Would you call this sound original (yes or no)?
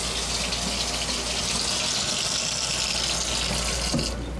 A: yes